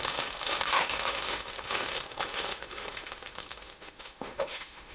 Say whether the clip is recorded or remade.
remade